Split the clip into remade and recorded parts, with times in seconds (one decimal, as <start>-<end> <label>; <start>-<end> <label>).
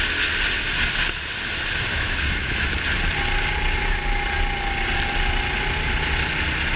0.0-1.9 recorded; 1.9-2.7 remade; 2.7-6.8 recorded